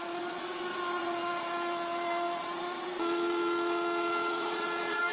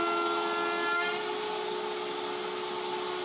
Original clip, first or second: second